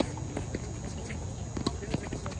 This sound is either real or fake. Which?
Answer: real